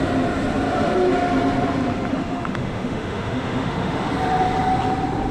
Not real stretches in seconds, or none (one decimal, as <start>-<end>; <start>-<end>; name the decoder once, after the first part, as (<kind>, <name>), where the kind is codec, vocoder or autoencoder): 2.1-4.1 (autoencoder, DAC-VAE)